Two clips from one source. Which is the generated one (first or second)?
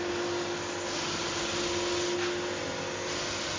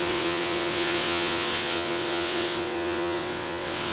second